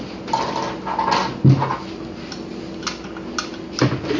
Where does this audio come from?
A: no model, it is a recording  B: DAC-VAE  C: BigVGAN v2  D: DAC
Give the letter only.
A